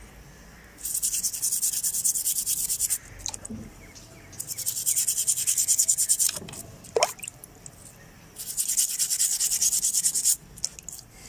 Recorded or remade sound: recorded